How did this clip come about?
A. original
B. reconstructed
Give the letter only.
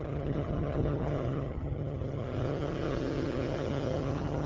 B